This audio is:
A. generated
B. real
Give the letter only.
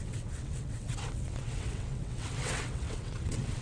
A